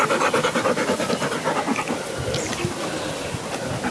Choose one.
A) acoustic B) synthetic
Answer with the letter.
A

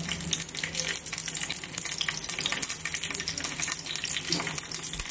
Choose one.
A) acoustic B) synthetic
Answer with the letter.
A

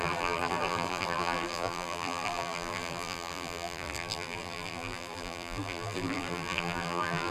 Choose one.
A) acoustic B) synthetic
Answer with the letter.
B